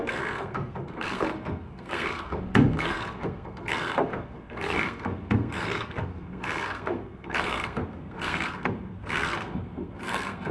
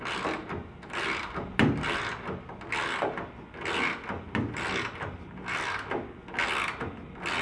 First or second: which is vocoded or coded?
first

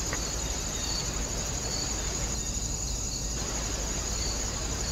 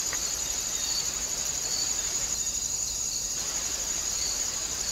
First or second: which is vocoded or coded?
second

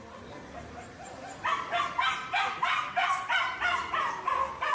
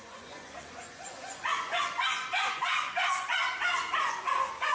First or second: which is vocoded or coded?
second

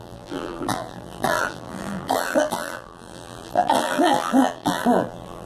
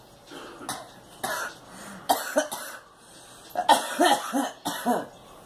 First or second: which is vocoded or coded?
first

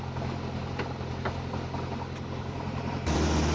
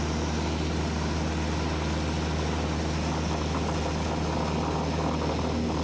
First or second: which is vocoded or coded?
first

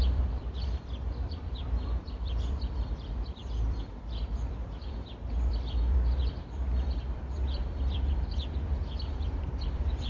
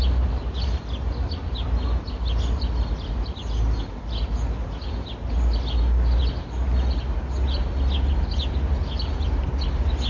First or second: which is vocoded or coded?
first